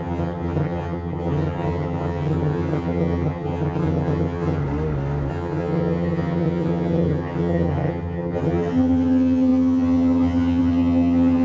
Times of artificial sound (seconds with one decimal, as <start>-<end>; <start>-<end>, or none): 0.0-4.6; 5.3-11.4